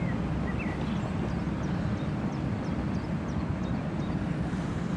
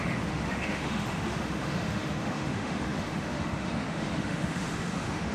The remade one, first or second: second